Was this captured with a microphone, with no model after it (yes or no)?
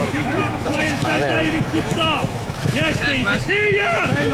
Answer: no